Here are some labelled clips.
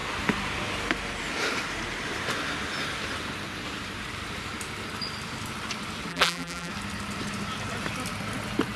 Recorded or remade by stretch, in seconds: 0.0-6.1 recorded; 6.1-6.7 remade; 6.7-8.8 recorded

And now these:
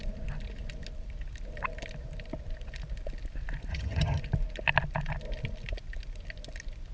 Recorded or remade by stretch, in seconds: 0.0-3.7 recorded; 3.7-4.2 remade; 4.2-6.9 recorded

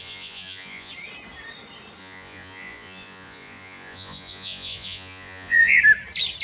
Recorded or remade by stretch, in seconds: 0.0-0.9 remade; 0.9-2.0 recorded; 2.0-5.8 remade; 5.8-6.4 recorded

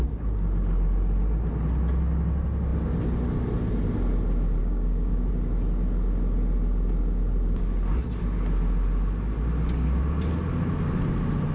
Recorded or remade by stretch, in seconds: 0.0-4.6 recorded; 4.6-5.3 remade; 5.3-11.5 recorded

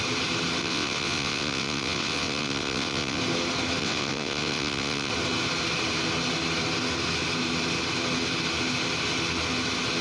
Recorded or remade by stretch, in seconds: 0.0-0.6 recorded; 0.6-3.2 remade; 3.2-3.8 recorded; 3.8-5.1 remade; 5.1-10.0 recorded

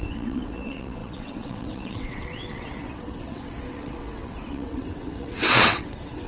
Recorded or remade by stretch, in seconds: 0.0-6.3 remade

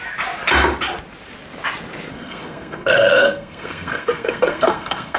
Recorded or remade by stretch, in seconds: 0.0-2.1 recorded; 2.1-5.2 remade

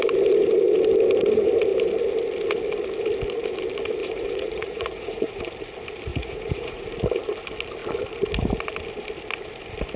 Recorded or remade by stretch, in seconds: 0.0-4.0 recorded; 4.0-5.4 remade; 5.4-6.1 recorded; 6.1-6.9 remade; 6.9-10.0 recorded